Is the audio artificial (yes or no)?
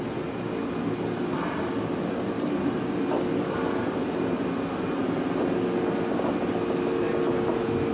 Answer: no